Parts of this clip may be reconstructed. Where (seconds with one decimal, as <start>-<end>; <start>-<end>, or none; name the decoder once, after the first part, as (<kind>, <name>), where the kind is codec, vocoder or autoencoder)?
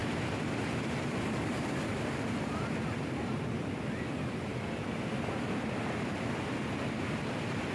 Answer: none